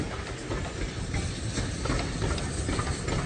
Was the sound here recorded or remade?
recorded